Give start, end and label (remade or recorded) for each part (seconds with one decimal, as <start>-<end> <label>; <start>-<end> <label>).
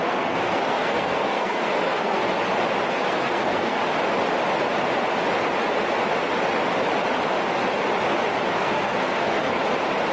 0.0-2.2 remade; 2.2-2.9 recorded; 2.9-3.8 remade; 3.8-8.6 recorded; 8.6-9.6 remade; 9.6-10.1 recorded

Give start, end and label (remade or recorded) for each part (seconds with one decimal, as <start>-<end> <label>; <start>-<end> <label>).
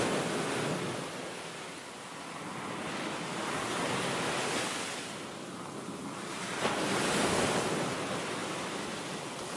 0.0-9.6 recorded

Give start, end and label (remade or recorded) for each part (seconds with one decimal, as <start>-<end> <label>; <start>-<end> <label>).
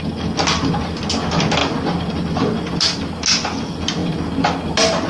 0.0-5.1 recorded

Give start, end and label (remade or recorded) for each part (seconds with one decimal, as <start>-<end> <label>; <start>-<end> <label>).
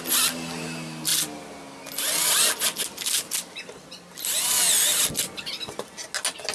0.0-6.5 recorded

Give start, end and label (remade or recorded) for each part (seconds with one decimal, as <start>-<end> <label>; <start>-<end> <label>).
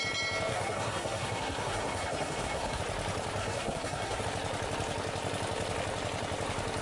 0.0-0.5 recorded; 0.5-2.8 remade; 2.8-3.4 recorded; 3.4-4.2 remade; 4.2-6.8 recorded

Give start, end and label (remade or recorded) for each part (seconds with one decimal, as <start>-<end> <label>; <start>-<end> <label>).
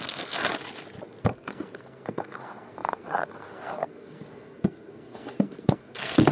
0.0-0.4 remade; 0.4-1.2 recorded; 1.2-6.3 remade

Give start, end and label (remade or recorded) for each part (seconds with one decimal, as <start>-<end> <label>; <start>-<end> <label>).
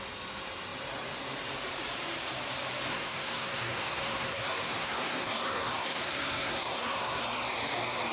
0.0-2.9 recorded; 2.9-7.2 remade; 7.2-8.1 recorded